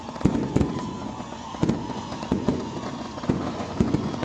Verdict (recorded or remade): remade